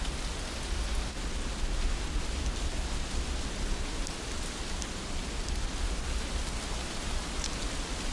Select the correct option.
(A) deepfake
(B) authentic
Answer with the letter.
B